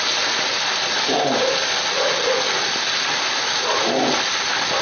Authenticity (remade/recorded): recorded